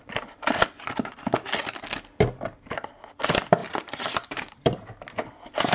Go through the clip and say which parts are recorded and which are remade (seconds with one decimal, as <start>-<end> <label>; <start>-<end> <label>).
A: 0.0-3.6 recorded; 3.6-4.9 remade; 4.9-5.7 recorded